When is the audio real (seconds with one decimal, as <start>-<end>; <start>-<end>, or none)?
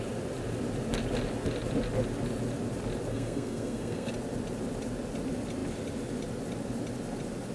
0.0-3.1; 4.1-7.5